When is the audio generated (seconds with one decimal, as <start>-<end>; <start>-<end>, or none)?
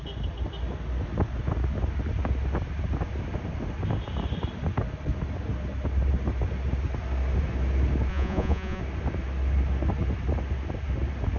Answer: 8.1-8.8